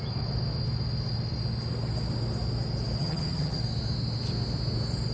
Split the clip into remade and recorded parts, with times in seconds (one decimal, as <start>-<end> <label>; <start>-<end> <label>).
0.0-3.0 recorded; 3.0-3.6 remade; 3.6-5.1 recorded